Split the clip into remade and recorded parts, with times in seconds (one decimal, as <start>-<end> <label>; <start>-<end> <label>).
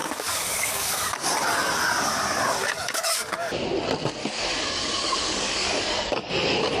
0.0-1.3 remade; 1.3-2.6 recorded; 2.6-3.5 remade; 3.5-4.2 recorded; 4.2-6.3 remade; 6.3-6.8 recorded